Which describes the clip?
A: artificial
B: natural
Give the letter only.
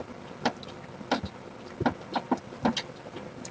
B